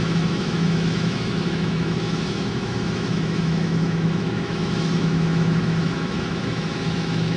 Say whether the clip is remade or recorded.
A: remade